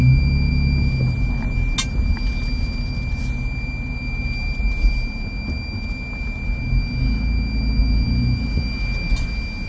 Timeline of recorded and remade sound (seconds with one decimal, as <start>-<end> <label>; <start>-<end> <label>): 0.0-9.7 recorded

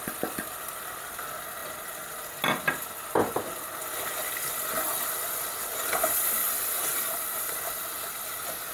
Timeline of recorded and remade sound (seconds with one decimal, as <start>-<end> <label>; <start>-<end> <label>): 0.0-8.7 recorded

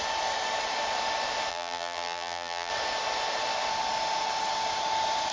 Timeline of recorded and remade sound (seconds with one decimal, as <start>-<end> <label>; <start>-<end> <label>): 0.0-1.5 recorded; 1.5-2.7 remade; 2.7-5.3 recorded